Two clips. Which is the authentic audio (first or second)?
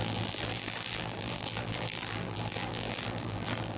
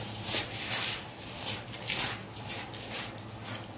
second